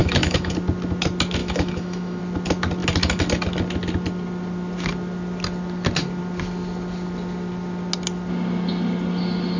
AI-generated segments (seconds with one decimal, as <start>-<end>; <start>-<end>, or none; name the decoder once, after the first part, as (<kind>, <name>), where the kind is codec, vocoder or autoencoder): 0.0-0.5 (autoencoder, DAC-VAE); 1.4-2.2